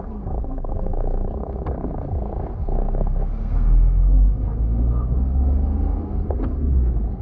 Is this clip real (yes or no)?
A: no